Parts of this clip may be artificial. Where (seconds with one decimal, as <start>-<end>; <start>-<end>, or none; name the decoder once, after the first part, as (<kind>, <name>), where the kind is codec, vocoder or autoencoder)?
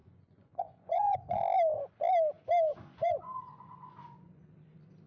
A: 0.0-1.4 (vocoder, Vocos); 2.7-4.4